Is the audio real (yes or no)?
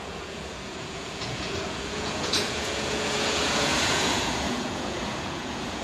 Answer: no